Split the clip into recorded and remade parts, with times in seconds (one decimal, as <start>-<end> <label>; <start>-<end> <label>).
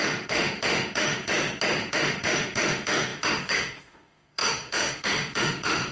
0.0-1.3 remade; 1.3-1.8 recorded; 1.8-5.9 remade